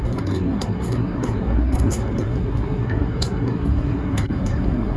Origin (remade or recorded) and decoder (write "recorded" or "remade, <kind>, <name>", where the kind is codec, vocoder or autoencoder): remade, codec, SNAC